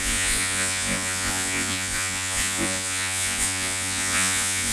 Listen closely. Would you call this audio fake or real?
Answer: fake